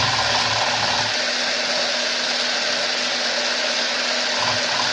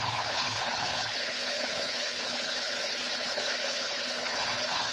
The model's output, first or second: second